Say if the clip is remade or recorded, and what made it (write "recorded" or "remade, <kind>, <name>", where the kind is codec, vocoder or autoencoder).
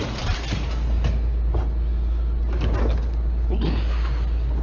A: recorded